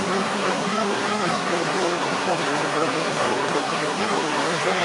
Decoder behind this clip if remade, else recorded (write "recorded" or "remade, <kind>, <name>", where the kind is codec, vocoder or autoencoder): remade, codec, SNAC